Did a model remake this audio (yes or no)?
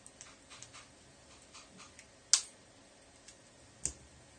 no